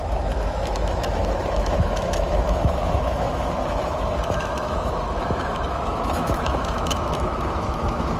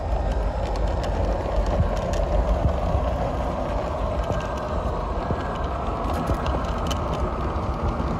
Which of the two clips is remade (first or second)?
first